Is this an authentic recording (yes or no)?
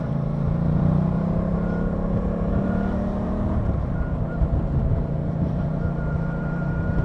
no